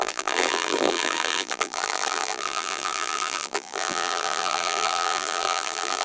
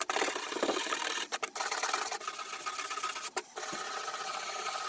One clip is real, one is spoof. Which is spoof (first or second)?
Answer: first